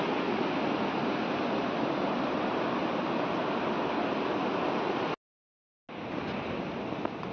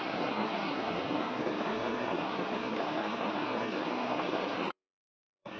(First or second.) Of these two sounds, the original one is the first